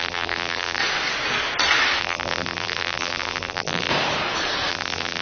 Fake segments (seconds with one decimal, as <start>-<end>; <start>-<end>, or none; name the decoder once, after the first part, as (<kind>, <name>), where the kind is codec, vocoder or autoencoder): 0.0-0.8 (vocoder, BigVGAN v2); 2.0-3.9; 4.7-5.2